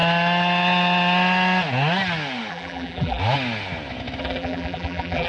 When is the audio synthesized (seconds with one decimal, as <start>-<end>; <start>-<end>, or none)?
2.5-3.2; 4.2-5.3